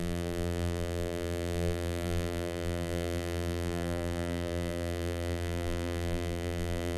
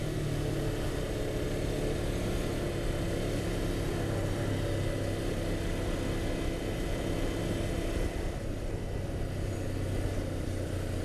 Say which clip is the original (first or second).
second